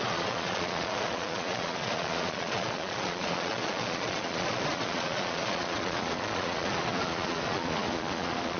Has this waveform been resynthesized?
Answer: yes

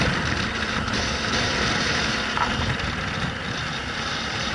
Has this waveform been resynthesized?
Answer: no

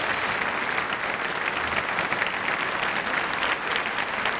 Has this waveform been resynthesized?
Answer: no